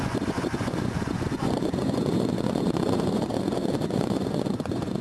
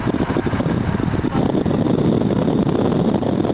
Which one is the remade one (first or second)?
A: first